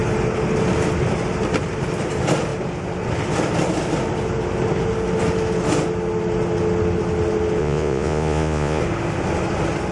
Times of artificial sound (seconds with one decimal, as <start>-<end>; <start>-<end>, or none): 7.6-8.8